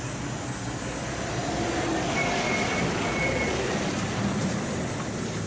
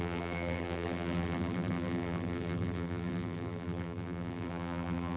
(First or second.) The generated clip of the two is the second